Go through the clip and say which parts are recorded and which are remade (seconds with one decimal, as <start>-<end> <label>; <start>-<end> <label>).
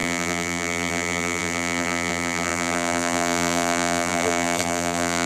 0.0-5.3 remade